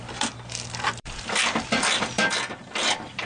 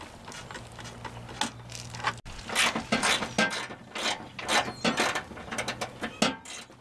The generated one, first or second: first